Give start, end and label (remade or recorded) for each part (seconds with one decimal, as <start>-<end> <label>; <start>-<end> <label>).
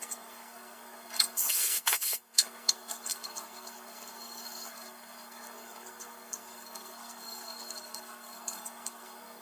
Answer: 0.0-9.4 remade